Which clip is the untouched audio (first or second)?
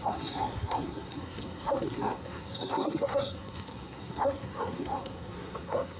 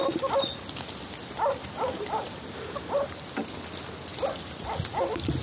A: second